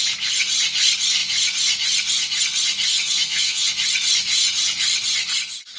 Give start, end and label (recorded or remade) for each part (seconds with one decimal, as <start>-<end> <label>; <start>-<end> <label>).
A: 0.0-2.9 recorded; 2.9-3.7 remade; 3.7-5.8 recorded